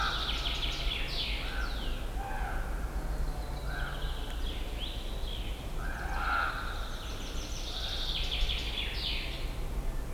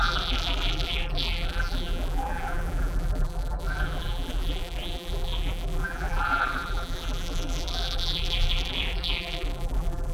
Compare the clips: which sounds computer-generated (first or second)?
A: second